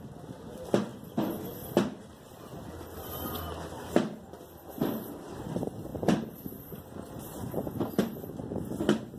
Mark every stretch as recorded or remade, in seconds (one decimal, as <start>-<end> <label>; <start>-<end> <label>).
0.0-9.2 recorded